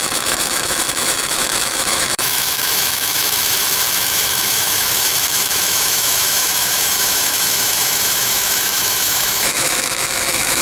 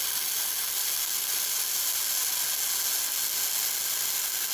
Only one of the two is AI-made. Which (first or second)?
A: first